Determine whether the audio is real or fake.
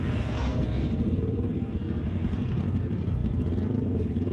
fake